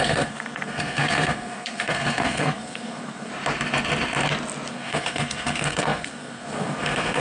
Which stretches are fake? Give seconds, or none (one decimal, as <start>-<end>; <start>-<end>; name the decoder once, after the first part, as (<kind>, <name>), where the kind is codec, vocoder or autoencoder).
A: 0.0-3.3 (codec, SNAC); 4.7-7.2